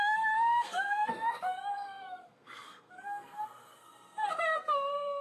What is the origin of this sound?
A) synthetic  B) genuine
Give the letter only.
A